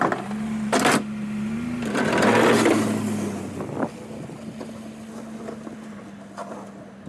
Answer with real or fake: real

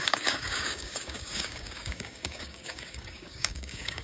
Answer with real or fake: fake